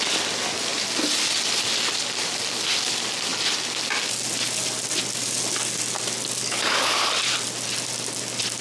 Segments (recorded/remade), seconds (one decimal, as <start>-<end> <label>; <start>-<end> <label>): 0.0-6.4 recorded; 6.4-7.0 remade; 7.0-8.6 recorded